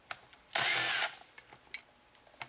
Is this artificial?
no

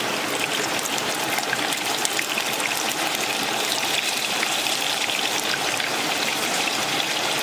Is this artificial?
yes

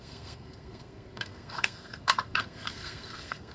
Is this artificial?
yes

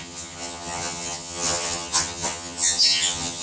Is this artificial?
yes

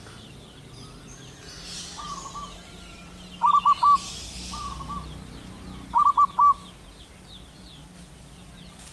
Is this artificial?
no